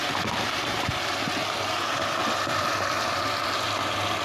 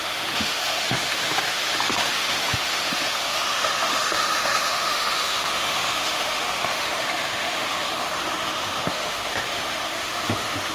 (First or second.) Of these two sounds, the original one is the first